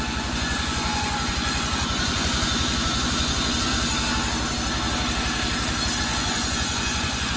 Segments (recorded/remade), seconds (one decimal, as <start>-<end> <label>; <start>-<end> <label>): 0.0-3.7 remade; 3.7-6.0 recorded; 6.0-7.4 remade